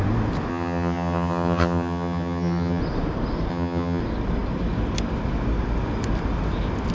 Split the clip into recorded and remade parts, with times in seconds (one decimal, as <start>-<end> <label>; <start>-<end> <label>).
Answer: 0.0-0.5 recorded; 0.5-2.8 remade; 2.8-3.5 recorded; 3.5-4.0 remade; 4.0-6.9 recorded

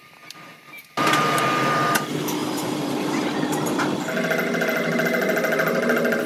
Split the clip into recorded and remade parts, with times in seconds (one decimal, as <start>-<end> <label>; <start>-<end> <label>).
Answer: 0.0-0.5 recorded; 0.5-1.4 remade; 1.4-2.4 recorded; 2.4-3.6 remade; 3.6-6.3 recorded

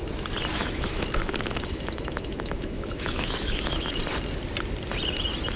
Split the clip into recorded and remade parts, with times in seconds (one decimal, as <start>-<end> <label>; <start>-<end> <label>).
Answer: 0.0-0.6 recorded; 0.6-4.0 remade; 4.0-5.6 recorded

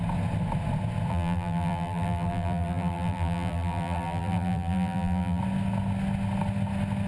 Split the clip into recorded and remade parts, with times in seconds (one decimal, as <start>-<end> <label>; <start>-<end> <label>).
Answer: 0.0-1.1 recorded; 1.1-5.4 remade; 5.4-7.1 recorded